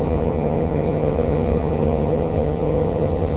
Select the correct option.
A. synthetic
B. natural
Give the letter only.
A